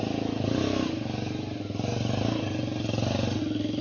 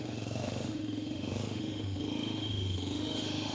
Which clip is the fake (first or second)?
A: second